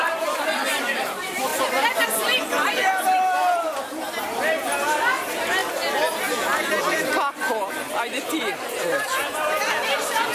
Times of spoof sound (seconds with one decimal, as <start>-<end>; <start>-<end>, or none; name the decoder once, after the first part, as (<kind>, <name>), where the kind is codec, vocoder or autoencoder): 0.0-5.6 (vocoder, BigVGAN v2); 6.8-10.3